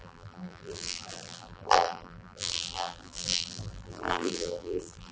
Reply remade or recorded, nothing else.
remade